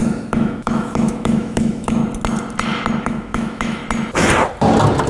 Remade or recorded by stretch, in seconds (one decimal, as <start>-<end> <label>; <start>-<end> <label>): 0.0-2.0 remade; 2.0-3.0 recorded; 3.0-3.8 remade; 3.8-5.1 recorded

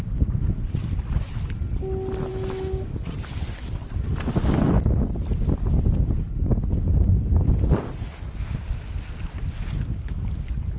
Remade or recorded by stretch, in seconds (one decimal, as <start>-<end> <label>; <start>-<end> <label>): 0.0-2.3 recorded; 2.3-3.1 remade; 3.1-10.8 recorded